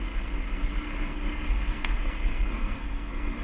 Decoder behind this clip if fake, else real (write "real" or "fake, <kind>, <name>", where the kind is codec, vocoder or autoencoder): fake, codec, SNAC